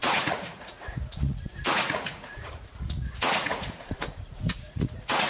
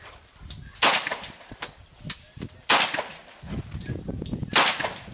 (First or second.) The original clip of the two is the second